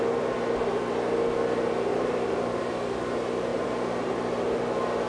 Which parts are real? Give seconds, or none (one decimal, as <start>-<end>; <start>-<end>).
0.0-1.9; 2.6-3.5; 4.3-5.1